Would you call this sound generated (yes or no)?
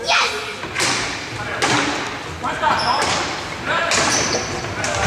no